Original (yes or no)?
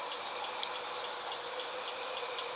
yes